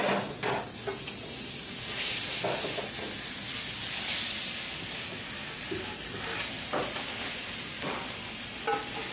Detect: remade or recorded recorded